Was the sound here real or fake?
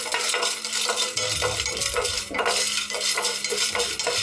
real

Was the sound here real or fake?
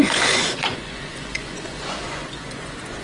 fake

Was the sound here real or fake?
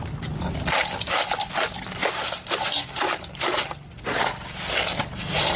real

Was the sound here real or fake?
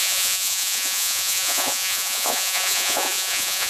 fake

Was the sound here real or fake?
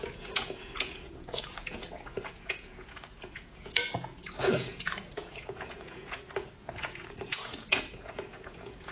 fake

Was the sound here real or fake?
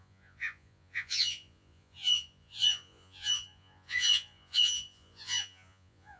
fake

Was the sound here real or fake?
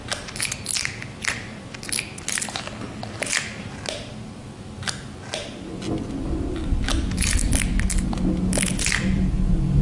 real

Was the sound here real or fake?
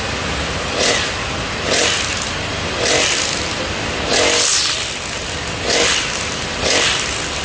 real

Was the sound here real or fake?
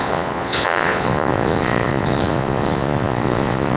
fake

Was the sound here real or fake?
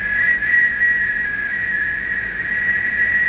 fake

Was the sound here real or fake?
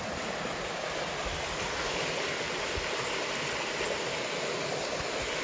real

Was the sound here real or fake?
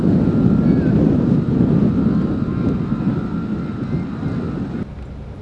real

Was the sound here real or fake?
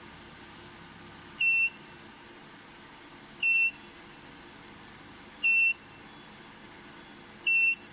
real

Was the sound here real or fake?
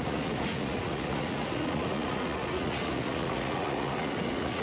fake